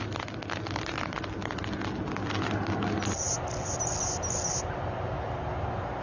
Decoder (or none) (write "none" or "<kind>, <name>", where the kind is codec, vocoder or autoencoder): none